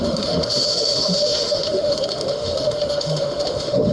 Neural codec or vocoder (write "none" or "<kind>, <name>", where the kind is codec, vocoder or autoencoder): autoencoder, DAC-VAE